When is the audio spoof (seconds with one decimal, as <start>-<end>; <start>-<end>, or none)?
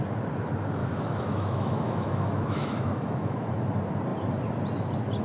0.8-3.5